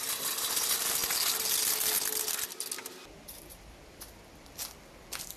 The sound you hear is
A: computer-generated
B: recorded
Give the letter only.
B